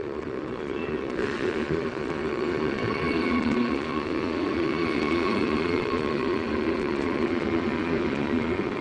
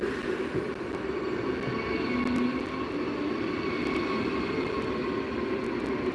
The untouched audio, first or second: second